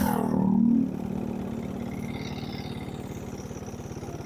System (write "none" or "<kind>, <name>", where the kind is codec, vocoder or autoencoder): none